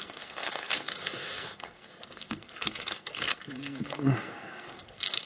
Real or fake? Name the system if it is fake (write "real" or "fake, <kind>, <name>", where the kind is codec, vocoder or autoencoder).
fake, codec, SNAC